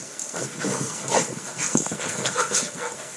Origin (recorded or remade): remade